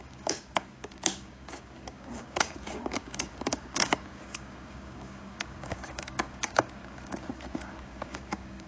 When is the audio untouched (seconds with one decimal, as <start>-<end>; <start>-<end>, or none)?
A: none